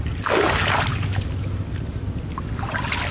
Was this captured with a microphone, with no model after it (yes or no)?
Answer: yes